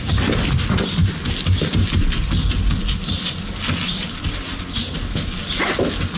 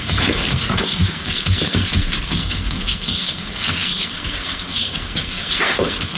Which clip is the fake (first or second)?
second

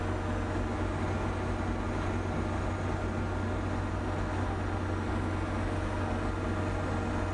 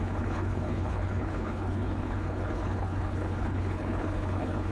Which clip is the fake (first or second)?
second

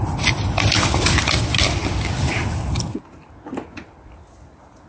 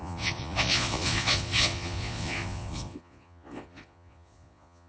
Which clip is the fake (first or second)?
second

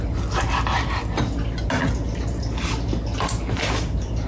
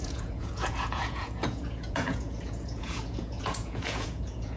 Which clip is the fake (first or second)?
second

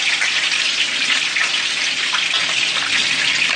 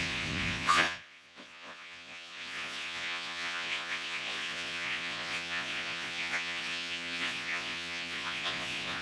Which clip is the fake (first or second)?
second